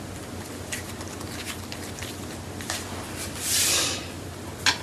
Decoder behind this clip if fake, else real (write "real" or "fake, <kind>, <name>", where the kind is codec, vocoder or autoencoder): real